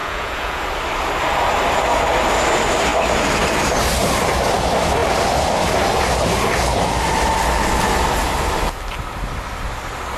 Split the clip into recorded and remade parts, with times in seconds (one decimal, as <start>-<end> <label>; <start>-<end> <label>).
0.0-0.6 remade; 0.6-10.2 recorded